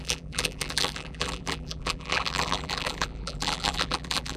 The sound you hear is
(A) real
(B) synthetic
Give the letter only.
B